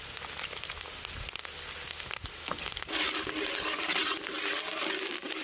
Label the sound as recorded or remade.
recorded